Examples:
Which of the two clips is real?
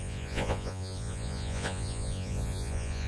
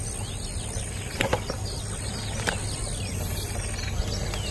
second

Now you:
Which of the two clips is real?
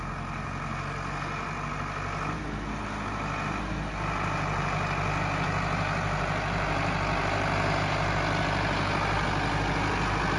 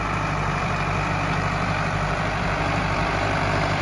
first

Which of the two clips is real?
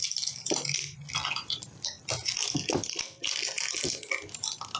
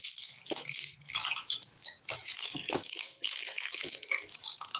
first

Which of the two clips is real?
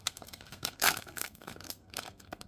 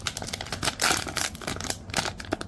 second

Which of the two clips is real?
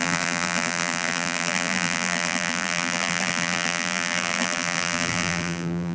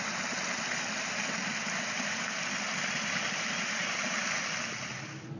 second